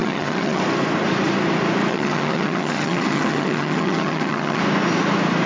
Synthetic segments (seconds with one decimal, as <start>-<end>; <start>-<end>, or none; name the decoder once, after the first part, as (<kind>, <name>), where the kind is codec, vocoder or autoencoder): 0.0-0.6 (vocoder, HiFi-GAN); 1.9-4.6